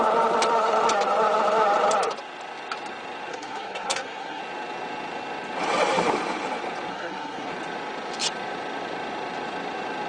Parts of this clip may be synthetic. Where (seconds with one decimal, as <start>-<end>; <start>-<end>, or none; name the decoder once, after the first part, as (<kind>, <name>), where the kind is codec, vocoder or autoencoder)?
3.3-4.4 (codec, SNAC); 6.9-7.5